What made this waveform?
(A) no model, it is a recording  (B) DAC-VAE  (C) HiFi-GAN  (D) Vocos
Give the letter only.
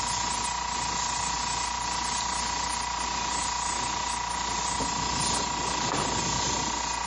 A